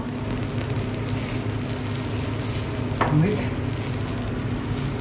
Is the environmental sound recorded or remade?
recorded